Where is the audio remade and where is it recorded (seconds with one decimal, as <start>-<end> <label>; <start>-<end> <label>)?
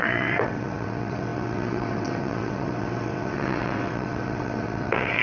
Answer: 0.0-5.2 remade